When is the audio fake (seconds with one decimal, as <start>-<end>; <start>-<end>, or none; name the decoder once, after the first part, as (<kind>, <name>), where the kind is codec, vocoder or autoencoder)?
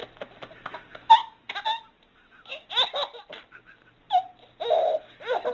none